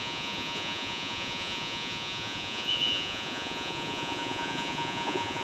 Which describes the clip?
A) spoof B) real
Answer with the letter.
A